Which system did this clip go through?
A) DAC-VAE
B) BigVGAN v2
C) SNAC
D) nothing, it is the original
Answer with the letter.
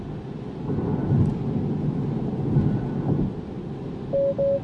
D